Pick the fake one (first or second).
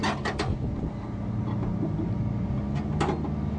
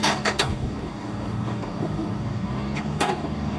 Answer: second